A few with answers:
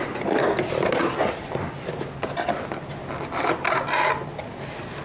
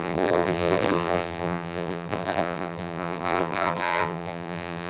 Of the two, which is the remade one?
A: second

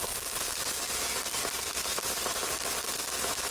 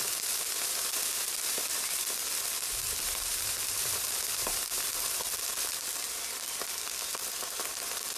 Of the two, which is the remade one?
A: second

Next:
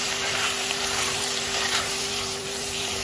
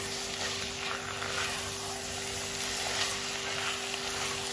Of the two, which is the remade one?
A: first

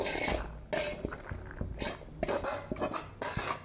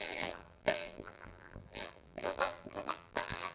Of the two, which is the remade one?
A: second